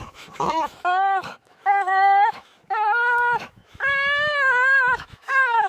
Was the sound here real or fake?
fake